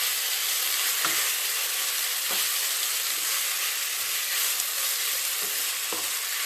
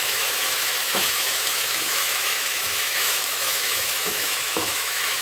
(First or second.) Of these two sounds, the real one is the first